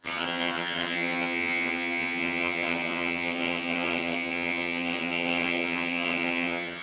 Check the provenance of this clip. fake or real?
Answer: fake